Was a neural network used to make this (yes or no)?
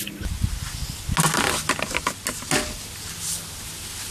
no